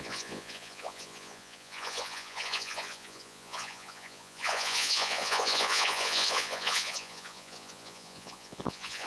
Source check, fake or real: fake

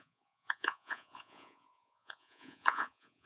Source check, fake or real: fake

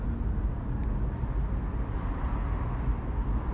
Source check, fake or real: real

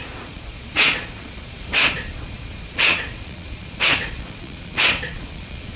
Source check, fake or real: fake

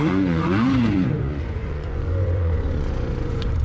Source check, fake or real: fake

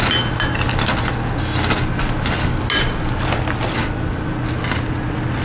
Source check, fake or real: real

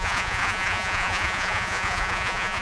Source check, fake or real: fake